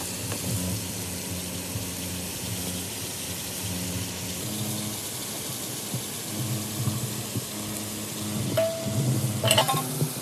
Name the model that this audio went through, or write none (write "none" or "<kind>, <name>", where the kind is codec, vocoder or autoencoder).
none